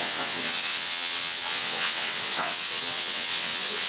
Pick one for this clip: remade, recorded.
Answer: remade